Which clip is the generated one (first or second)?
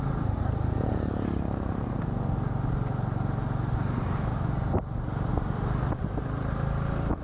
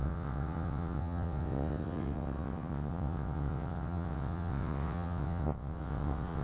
second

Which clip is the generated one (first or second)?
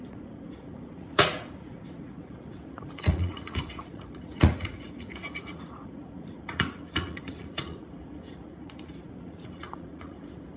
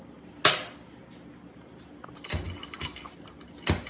first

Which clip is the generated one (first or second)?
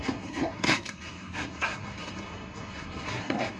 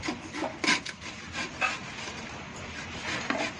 first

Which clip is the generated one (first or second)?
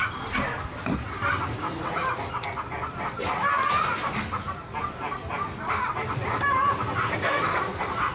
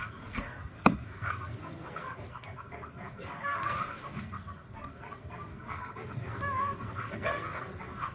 second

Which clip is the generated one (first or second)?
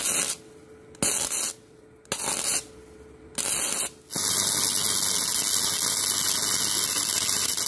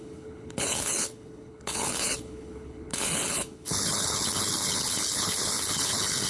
second